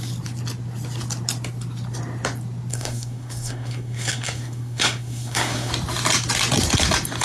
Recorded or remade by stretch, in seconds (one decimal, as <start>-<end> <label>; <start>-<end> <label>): 0.0-2.7 recorded; 2.7-5.7 remade; 5.7-7.2 recorded